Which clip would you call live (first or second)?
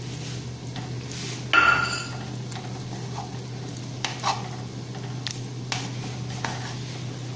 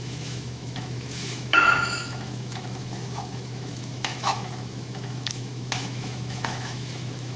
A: first